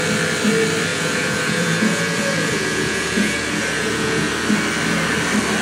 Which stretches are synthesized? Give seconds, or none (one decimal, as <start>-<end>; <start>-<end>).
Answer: 0.9-4.3